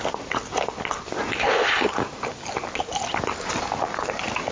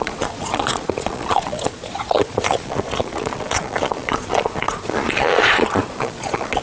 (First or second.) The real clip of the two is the first